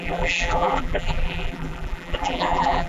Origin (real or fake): fake